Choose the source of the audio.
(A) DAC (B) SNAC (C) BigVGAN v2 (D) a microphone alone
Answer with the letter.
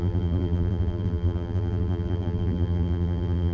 C